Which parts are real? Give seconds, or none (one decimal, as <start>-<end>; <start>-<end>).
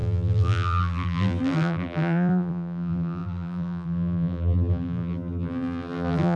none